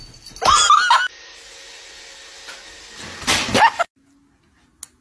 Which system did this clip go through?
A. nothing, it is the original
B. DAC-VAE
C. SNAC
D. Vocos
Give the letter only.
A